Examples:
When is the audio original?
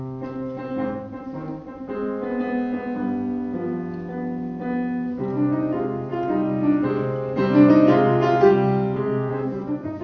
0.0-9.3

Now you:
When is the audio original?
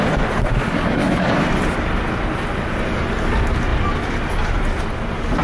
0.0-0.5; 1.3-5.4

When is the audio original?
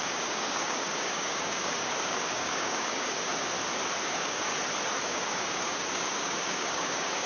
3.3-4.0; 4.5-5.0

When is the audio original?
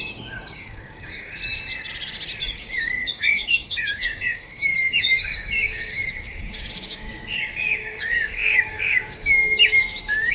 1.4-2.6